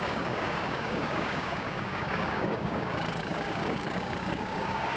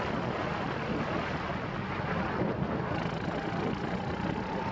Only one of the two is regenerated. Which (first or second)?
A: first